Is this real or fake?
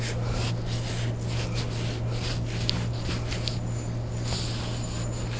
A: real